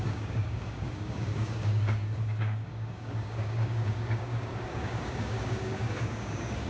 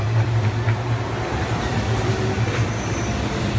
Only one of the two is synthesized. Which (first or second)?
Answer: first